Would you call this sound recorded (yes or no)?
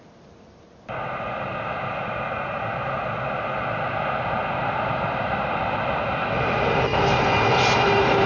yes